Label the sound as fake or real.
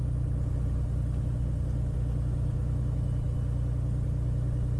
real